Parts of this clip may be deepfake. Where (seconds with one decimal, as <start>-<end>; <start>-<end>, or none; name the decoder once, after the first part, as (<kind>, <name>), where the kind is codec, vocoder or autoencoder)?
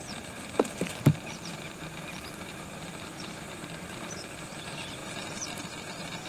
0.0-1.5 (vocoder, BigVGAN v2); 2.4-5.0